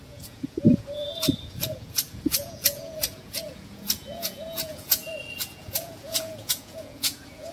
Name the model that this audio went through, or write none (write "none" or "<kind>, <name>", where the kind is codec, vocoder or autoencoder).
vocoder, Vocos